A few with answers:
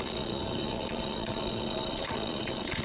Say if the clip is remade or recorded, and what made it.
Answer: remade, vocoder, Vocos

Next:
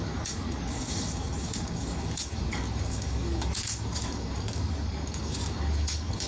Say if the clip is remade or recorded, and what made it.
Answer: remade, codec, DAC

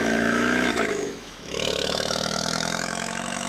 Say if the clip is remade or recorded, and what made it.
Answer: remade, autoencoder, DAC-VAE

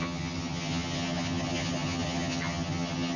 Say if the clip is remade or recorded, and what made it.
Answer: remade, vocoder, HiFi-GAN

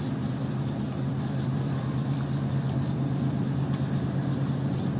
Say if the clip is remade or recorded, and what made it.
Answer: recorded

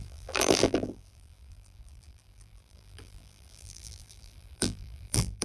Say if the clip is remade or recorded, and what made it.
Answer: remade, vocoder, BigVGAN v2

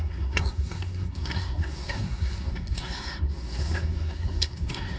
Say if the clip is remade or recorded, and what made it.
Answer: remade, codec, SNAC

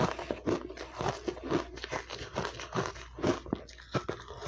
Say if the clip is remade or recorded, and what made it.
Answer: recorded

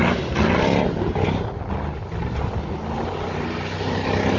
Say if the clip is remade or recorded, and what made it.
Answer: recorded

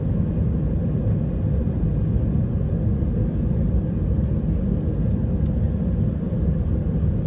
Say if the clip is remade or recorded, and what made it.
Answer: recorded